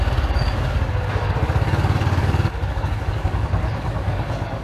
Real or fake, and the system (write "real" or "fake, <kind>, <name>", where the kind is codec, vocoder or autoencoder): fake, codec, DAC